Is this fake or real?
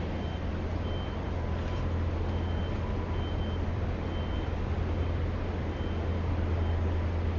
real